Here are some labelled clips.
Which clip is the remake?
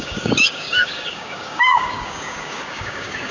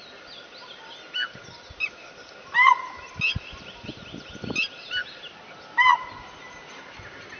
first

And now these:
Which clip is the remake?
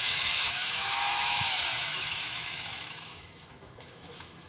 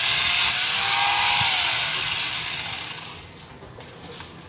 first